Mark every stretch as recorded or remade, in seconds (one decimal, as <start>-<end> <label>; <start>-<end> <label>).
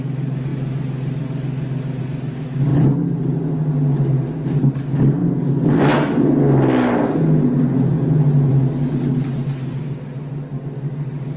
0.0-11.4 recorded